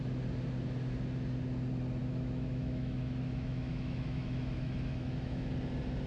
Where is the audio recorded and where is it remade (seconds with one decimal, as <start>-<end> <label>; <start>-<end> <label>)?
0.0-2.0 recorded; 2.0-5.5 remade; 5.5-6.1 recorded